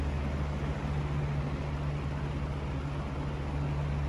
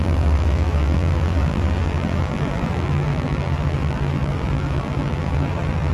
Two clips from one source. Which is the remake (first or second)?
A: second